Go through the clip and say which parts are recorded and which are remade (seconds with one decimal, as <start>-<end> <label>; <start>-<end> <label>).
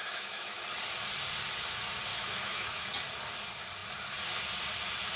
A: 0.0-0.6 remade; 0.6-2.1 recorded; 2.1-2.9 remade; 2.9-5.2 recorded